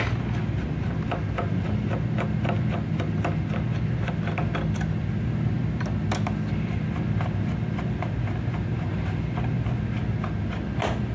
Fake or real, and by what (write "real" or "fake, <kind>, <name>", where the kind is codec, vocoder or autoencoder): real